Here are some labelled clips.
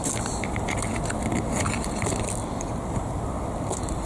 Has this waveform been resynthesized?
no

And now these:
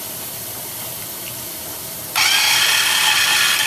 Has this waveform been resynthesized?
yes